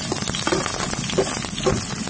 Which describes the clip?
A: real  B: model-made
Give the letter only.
A